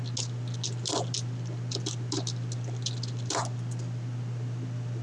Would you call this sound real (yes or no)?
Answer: yes